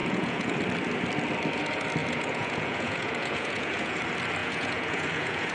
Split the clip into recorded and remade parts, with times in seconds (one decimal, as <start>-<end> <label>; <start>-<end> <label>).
0.0-0.5 remade; 0.5-2.0 recorded; 2.0-4.0 remade; 4.0-4.4 recorded; 4.4-5.5 remade

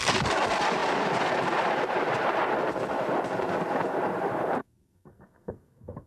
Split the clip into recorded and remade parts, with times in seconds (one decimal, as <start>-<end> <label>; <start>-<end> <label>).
0.0-4.6 recorded; 4.6-6.1 remade

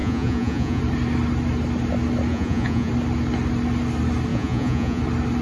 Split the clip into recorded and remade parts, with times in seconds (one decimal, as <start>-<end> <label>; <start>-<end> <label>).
0.0-0.8 remade; 0.8-2.3 recorded; 2.3-2.9 remade; 2.9-4.3 recorded; 4.3-5.0 remade; 5.0-5.4 recorded

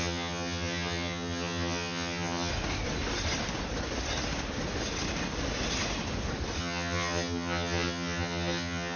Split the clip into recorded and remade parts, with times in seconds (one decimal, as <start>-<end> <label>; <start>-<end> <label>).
0.0-2.5 remade; 2.5-6.6 recorded; 6.6-9.0 remade

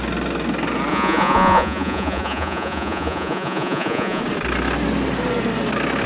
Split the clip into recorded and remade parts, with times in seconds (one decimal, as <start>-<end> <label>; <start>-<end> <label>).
0.0-0.9 recorded; 0.9-4.2 remade; 4.2-6.1 recorded

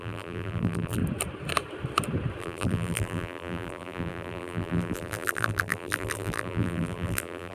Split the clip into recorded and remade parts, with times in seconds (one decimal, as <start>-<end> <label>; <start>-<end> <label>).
0.0-1.0 remade; 1.0-2.4 recorded; 2.4-7.5 remade

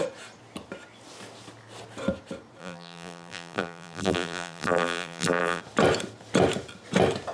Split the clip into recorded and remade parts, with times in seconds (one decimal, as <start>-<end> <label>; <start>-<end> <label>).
0.0-2.6 recorded; 2.6-5.6 remade; 5.6-7.3 recorded

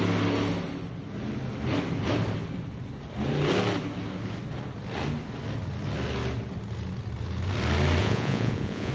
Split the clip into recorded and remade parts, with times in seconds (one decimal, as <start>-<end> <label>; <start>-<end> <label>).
0.0-8.0 recorded; 8.0-8.9 remade